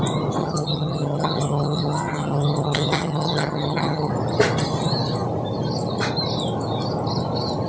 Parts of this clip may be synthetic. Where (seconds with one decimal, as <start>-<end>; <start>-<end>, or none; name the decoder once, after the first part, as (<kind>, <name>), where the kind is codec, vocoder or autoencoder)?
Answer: 0.4-4.1 (vocoder, HiFi-GAN)